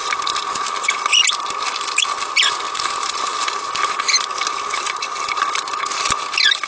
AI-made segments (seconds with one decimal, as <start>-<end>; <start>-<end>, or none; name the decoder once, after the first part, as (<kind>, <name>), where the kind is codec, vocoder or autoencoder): none